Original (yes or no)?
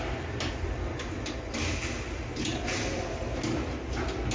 yes